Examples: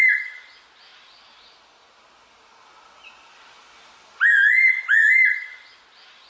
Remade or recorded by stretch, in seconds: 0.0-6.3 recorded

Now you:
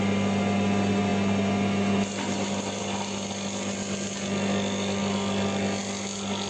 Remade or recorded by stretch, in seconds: 0.0-6.5 recorded

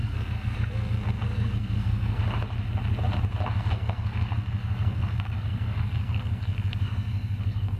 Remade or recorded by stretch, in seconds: 0.0-2.2 remade; 2.2-3.5 recorded; 3.5-7.8 remade

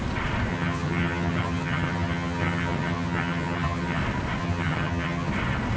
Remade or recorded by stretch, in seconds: 0.0-0.5 recorded; 0.5-4.0 remade; 4.0-4.4 recorded; 4.4-5.3 remade; 5.3-5.8 recorded